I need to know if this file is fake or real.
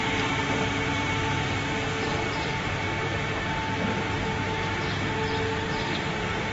real